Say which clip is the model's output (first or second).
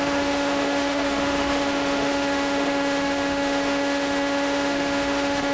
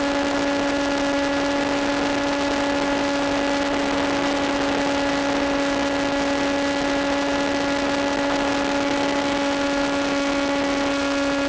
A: first